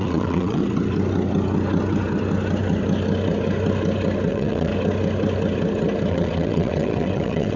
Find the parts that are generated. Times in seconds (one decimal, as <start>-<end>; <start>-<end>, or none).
0.0-0.6; 4.3-4.7; 6.1-7.6